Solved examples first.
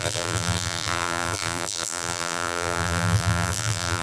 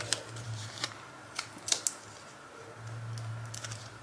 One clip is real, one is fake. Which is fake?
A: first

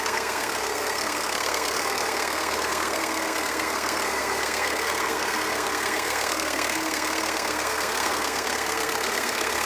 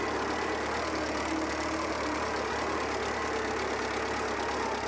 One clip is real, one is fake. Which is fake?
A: first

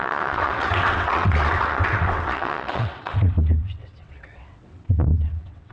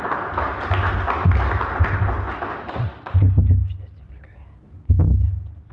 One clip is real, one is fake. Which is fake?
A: first